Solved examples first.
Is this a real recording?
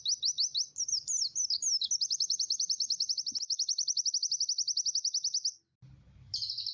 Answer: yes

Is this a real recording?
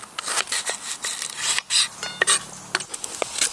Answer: yes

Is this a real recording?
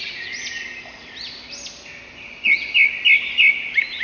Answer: yes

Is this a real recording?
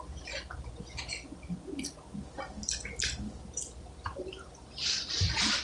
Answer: yes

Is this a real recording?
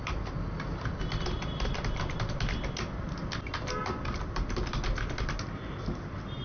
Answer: yes